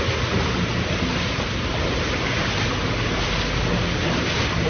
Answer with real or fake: real